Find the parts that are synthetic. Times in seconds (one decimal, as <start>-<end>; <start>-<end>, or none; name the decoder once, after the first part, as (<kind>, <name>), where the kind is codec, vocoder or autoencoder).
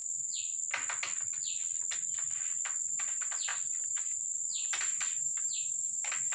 2.9-6.3 (vocoder, BigVGAN v2)